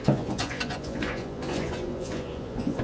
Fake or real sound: fake